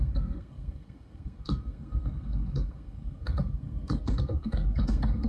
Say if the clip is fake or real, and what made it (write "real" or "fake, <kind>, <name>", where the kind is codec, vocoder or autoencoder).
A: fake, codec, SNAC